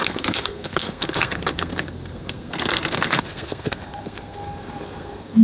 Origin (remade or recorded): remade